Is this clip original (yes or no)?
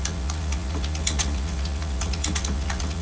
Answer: no